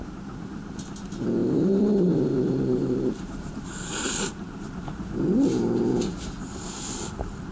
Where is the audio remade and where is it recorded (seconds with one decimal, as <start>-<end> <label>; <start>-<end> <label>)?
0.0-1.4 recorded; 1.4-5.2 remade; 5.2-7.5 recorded

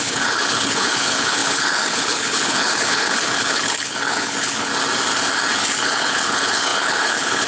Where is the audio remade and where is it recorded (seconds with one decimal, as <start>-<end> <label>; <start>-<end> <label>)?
0.0-4.7 remade; 4.7-5.5 recorded; 5.5-7.5 remade